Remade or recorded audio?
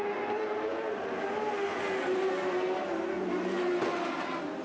recorded